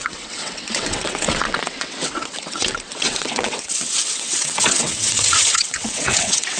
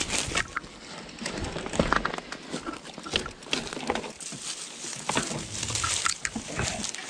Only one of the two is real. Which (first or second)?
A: second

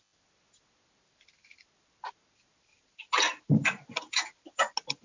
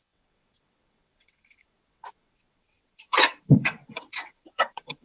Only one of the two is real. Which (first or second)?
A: first